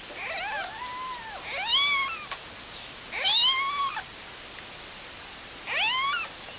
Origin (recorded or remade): recorded